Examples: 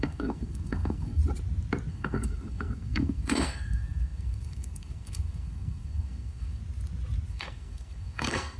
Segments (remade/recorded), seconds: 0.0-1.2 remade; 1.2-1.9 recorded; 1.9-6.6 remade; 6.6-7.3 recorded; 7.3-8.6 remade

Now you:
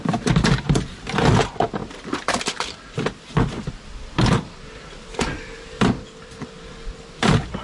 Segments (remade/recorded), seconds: 0.0-7.6 recorded

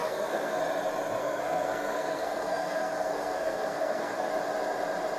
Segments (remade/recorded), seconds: 0.0-0.6 remade; 0.6-1.2 recorded; 1.2-4.3 remade; 4.3-5.2 recorded

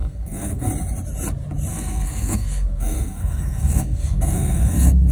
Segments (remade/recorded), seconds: 0.0-0.7 remade; 0.7-1.7 recorded; 1.7-5.1 remade